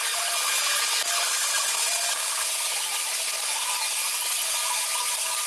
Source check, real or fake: real